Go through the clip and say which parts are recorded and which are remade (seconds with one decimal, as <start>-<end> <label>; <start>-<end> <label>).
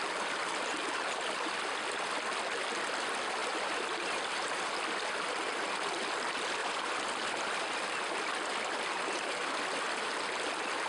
0.0-3.4 recorded; 3.4-4.2 remade; 4.2-10.9 recorded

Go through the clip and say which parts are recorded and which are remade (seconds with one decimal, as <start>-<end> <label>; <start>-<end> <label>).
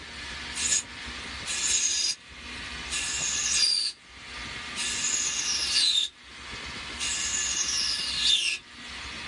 0.0-9.3 recorded